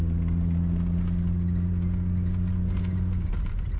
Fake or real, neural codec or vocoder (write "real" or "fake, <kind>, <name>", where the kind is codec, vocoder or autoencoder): real